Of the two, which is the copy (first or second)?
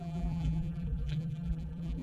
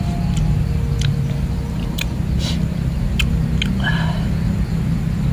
first